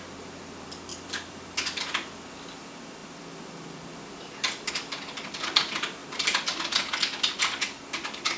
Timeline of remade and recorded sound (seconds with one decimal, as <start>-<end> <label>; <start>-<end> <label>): 0.0-0.9 recorded; 0.9-1.8 remade; 1.8-3.0 recorded; 3.0-4.7 remade; 4.7-6.0 recorded; 6.0-6.6 remade; 6.6-8.4 recorded